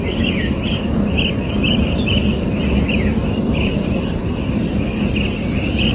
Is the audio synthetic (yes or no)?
yes